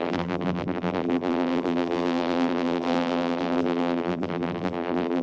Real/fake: fake